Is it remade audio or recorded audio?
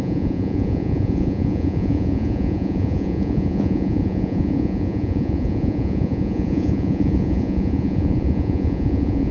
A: remade